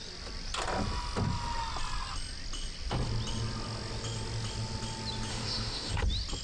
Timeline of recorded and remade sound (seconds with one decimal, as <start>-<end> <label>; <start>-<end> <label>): 0.0-5.3 recorded; 5.3-5.9 remade; 5.9-6.4 recorded